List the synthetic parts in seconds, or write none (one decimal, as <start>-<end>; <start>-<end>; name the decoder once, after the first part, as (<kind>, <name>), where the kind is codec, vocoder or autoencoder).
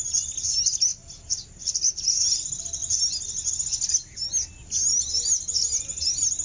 none